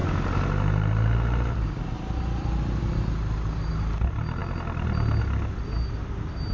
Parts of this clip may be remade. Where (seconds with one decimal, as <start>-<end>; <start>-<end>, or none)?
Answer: none